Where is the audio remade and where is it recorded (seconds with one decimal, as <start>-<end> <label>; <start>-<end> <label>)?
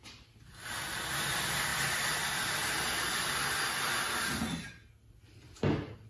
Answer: 0.0-6.1 recorded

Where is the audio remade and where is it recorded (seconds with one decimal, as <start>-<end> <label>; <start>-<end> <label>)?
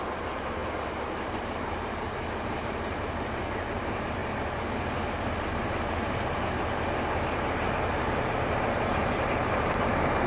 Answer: 0.0-0.6 remade; 0.6-1.4 recorded; 1.4-4.2 remade; 4.2-5.5 recorded; 5.5-10.3 remade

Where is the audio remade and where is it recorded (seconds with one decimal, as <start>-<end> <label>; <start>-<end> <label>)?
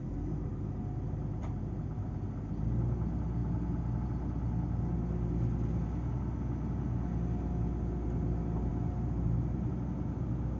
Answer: 0.0-10.6 recorded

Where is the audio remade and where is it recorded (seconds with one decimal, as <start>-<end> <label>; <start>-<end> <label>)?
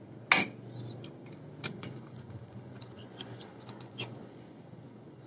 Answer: 0.0-1.7 recorded; 1.7-5.3 remade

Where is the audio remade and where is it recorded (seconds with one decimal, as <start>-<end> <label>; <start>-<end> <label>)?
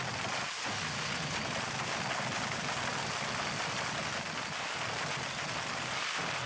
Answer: 0.0-6.5 recorded